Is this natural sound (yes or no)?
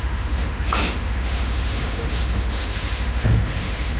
no